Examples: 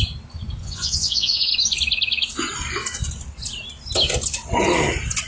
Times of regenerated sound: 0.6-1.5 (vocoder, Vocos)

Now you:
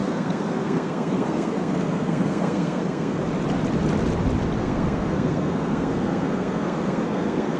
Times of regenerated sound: 0.0-3.2 (codec, SNAC); 4.6-7.6

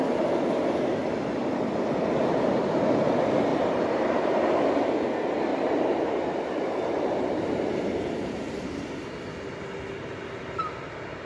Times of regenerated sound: 3.5-4.4 (vocoder, BigVGAN v2); 5.5-8.8